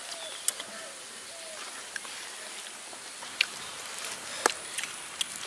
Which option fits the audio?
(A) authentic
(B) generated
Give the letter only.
A